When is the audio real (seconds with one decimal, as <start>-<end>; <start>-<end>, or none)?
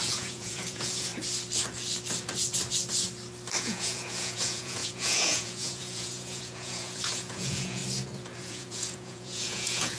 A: 1.1-3.6; 7.8-8.4